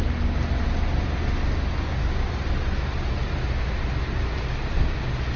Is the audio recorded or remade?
recorded